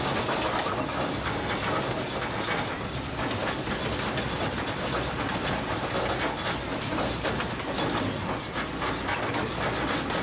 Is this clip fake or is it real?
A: real